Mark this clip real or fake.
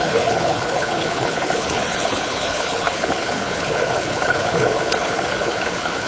fake